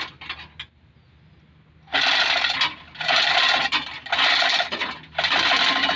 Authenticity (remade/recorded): recorded